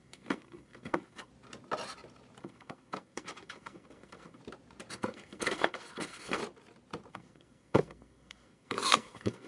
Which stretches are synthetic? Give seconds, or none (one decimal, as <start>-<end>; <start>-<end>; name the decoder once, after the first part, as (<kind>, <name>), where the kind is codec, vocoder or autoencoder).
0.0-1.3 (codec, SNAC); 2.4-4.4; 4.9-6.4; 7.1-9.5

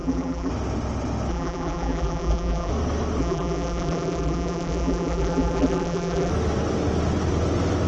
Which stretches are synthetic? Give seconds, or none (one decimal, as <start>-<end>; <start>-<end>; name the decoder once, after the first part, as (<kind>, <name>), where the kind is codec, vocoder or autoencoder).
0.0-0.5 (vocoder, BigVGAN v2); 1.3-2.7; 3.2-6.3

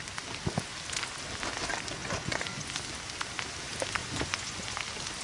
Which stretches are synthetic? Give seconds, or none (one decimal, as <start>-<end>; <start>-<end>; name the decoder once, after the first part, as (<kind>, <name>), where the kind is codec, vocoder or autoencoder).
2.0-2.8 (vocoder, Vocos); 4.0-4.8

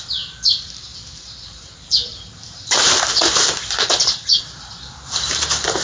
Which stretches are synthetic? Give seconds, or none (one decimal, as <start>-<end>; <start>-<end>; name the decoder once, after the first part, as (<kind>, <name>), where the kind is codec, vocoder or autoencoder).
0.9-4.4 (vocoder, BigVGAN v2)